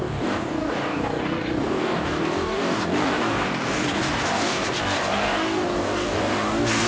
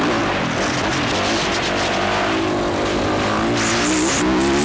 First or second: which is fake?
first